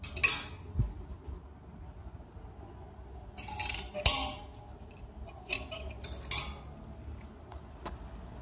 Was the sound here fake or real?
real